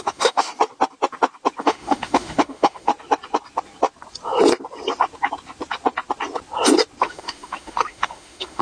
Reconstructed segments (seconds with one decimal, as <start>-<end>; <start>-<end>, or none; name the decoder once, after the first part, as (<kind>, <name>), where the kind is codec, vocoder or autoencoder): 0.0-0.5 (autoencoder, DAC-VAE); 1.6-2.9; 7.0-8.6